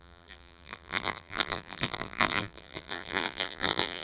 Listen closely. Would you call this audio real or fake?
fake